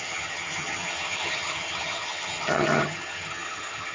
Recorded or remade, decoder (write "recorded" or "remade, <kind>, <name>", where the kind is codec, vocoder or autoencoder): remade, vocoder, HiFi-GAN